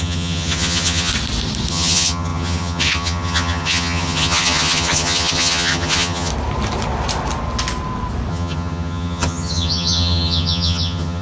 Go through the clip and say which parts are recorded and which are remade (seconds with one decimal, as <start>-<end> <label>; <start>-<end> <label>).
0.0-1.1 remade; 1.1-1.7 recorded; 1.7-6.3 remade; 6.3-8.3 recorded; 8.3-11.2 remade